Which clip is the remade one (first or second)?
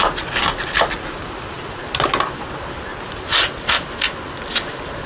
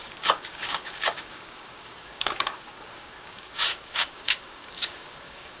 second